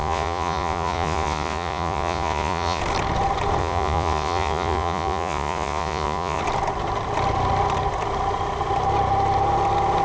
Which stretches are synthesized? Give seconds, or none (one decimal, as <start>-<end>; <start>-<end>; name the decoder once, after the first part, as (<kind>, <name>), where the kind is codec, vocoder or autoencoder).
0.0-2.8 (vocoder, Vocos); 3.6-6.4